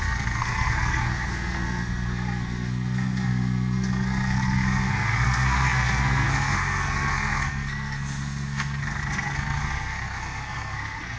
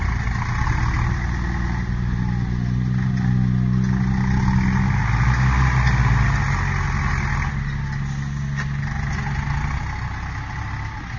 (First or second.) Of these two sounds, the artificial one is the first